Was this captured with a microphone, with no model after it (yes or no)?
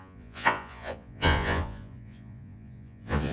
no